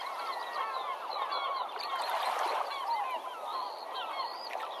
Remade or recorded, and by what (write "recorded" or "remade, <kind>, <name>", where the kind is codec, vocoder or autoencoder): recorded